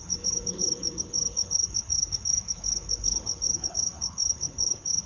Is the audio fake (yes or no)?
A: yes